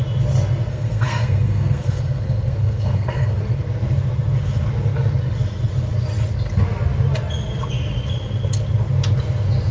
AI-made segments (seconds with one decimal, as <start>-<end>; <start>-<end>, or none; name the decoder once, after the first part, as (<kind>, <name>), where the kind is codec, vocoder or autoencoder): 0.7-3.4 (codec, SNAC)